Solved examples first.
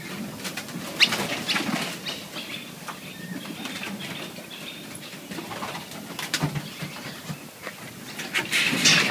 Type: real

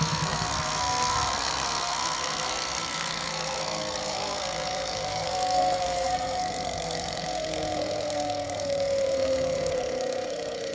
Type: fake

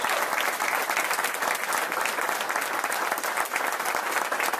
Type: real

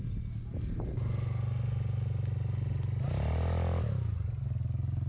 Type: real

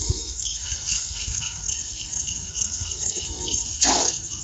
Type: fake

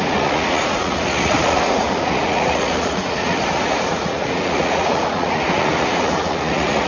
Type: fake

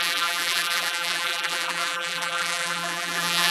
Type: fake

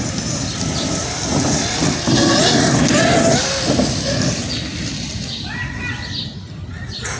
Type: real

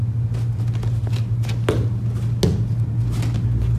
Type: real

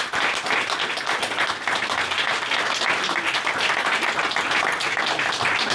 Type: real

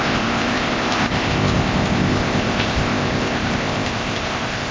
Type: fake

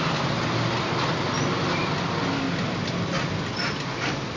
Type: real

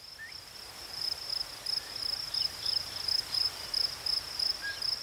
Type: real